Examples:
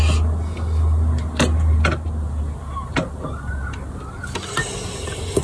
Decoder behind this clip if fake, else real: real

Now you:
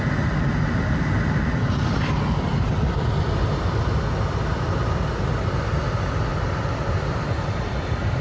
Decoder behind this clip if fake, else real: real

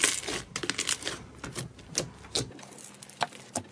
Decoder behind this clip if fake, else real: real